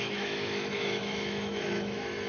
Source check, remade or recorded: remade